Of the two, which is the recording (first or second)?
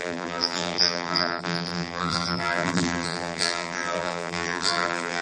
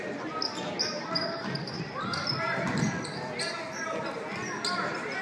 second